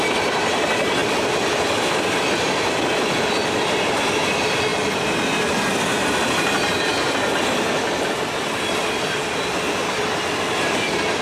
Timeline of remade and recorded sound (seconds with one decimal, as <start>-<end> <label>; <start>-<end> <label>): 0.0-1.0 recorded; 1.0-4.3 remade; 4.3-11.2 recorded